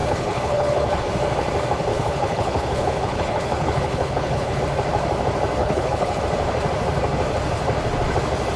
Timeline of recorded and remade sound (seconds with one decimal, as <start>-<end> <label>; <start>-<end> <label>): 0.0-1.0 remade; 1.0-1.9 recorded; 1.9-4.6 remade; 4.6-5.6 recorded; 5.6-6.2 remade; 6.2-8.6 recorded